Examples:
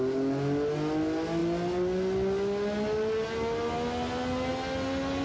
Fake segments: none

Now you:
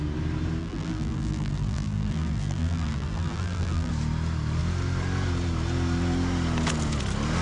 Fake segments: 0.6-3.9 (vocoder, BigVGAN v2)

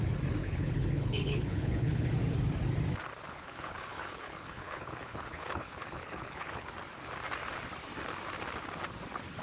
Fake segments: 0.4-2.1 (codec, HILCodec); 3.1-6.7

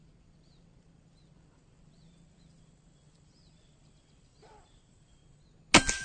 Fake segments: 0.0-5.2 (vocoder, BigVGAN v2)

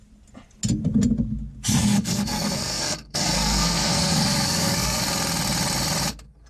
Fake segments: 1.8-5.0 (codec, SNAC)